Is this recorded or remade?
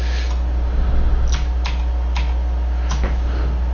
recorded